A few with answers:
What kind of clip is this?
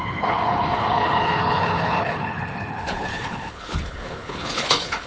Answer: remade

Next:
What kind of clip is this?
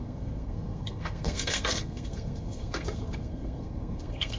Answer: remade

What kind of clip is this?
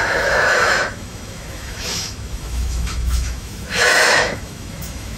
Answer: remade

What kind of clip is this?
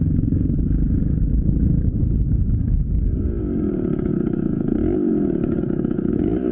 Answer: remade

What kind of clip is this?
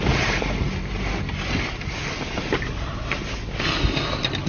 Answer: recorded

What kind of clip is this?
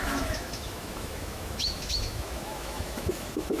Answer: remade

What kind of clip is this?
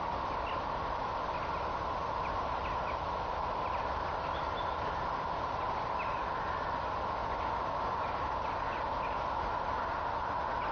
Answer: recorded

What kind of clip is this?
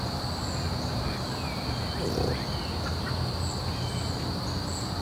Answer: recorded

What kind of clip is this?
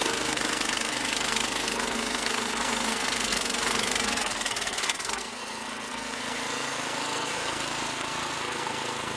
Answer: remade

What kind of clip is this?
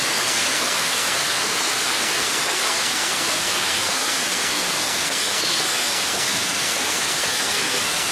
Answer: remade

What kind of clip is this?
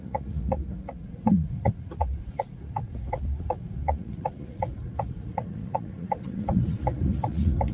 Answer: remade